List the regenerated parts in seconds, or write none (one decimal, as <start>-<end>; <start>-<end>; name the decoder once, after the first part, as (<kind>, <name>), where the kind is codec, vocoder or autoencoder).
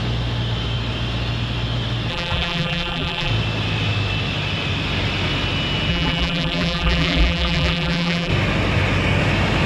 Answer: 2.1-3.3 (vocoder, BigVGAN v2); 5.9-8.3